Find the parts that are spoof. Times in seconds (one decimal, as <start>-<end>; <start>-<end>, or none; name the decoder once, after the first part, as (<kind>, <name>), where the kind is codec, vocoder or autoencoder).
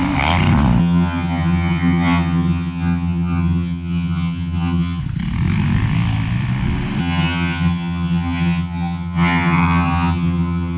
0.8-5.0 (vocoder, HiFi-GAN); 7.0-10.8